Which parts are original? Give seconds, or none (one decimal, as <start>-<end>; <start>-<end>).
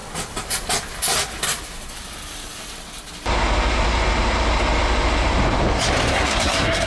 0.0-6.1